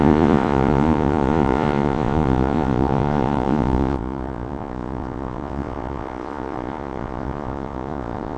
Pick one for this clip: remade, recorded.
remade